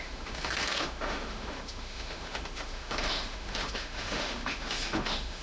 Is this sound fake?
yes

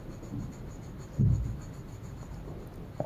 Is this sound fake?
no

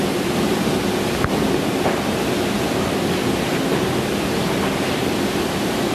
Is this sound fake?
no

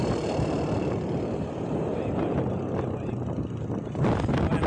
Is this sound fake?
no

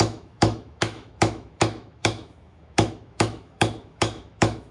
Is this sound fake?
yes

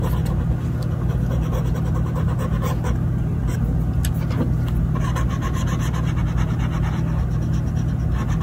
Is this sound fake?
no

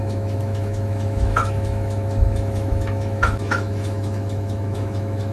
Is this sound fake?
yes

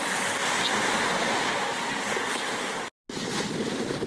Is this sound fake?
no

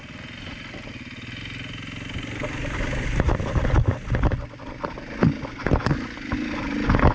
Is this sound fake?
no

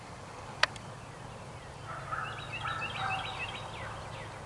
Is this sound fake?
no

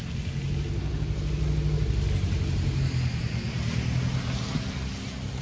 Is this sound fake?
no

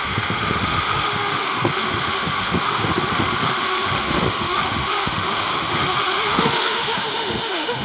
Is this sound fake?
yes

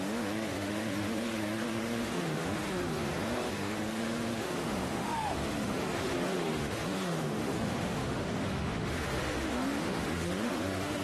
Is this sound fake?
yes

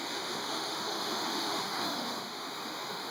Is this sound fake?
yes